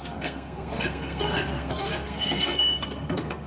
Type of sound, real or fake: fake